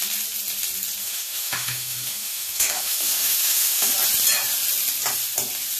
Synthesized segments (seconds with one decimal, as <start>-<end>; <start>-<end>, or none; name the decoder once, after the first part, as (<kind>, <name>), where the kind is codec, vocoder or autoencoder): 1.0-3.9 (autoencoder, DAC-VAE)